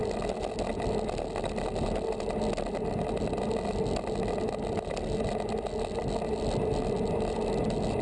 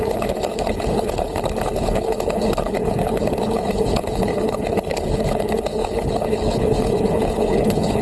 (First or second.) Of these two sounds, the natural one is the first